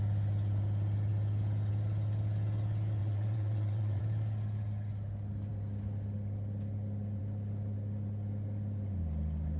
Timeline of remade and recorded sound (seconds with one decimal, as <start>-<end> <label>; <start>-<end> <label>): 0.0-3.0 recorded; 3.0-4.0 remade; 4.0-9.6 recorded